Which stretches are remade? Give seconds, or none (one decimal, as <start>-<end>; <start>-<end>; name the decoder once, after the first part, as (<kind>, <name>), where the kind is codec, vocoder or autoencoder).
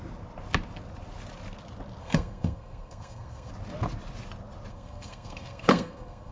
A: 2.0-3.5 (codec, SNAC); 4.7-6.3